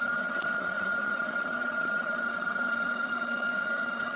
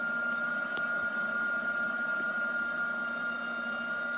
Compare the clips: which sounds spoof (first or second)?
first